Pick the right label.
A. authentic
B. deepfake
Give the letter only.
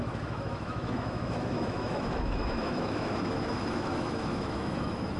B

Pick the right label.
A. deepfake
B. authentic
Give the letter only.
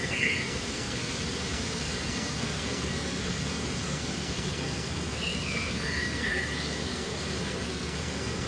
A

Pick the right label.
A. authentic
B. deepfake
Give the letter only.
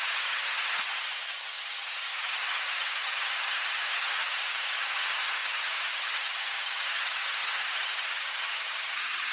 B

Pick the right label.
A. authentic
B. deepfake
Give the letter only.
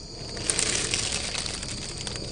A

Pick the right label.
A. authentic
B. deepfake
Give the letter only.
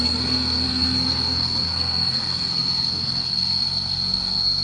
B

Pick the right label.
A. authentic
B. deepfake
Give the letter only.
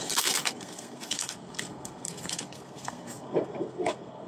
B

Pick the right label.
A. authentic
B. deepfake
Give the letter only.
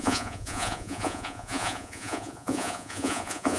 B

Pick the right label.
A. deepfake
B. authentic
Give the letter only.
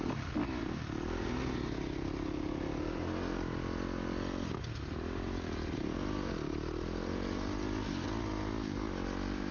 B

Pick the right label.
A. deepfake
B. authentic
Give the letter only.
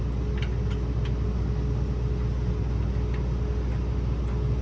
B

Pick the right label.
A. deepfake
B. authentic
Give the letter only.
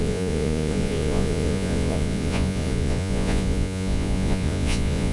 A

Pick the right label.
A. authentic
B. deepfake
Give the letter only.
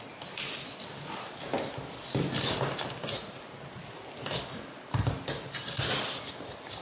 A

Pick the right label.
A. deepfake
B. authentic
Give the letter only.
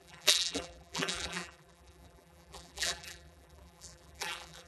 A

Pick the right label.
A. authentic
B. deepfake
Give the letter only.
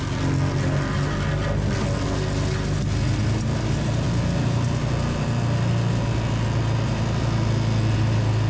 A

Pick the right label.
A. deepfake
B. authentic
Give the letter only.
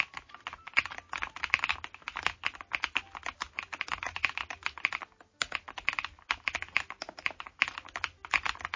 B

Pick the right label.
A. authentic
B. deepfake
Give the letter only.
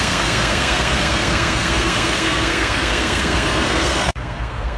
B